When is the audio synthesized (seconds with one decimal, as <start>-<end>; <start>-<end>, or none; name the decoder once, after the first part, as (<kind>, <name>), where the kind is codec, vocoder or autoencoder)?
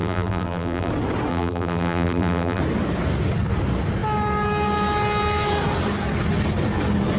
0.0-0.9 (vocoder, BigVGAN v2); 1.3-2.6